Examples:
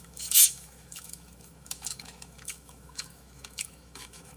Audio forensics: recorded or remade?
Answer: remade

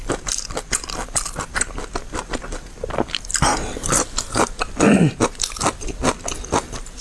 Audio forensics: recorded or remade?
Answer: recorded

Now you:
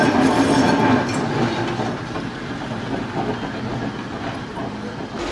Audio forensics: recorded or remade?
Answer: recorded